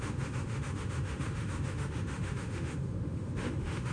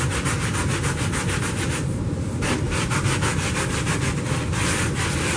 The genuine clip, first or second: second